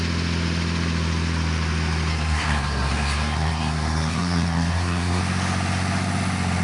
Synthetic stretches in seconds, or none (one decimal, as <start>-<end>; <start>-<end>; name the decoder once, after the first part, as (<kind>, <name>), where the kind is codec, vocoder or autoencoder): 2.1-5.2 (codec, SNAC)